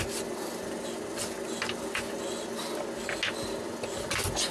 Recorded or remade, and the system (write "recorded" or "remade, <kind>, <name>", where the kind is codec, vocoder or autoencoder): recorded